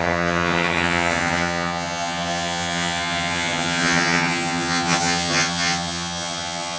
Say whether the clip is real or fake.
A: fake